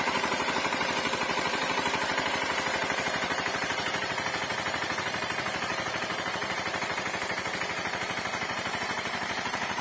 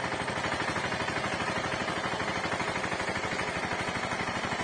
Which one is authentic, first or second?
second